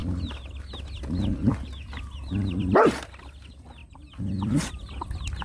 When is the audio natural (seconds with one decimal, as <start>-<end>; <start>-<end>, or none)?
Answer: 0.0-3.8